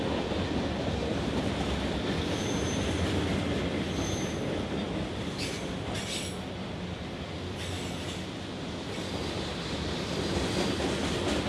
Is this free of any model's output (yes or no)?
yes